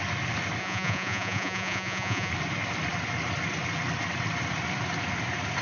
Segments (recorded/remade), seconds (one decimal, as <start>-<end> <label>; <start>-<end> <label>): 0.0-0.6 recorded; 0.6-2.3 remade; 2.3-5.6 recorded